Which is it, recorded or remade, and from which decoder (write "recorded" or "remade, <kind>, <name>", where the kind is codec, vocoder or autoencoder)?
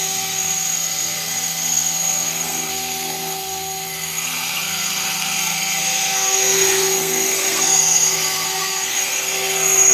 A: remade, codec, SNAC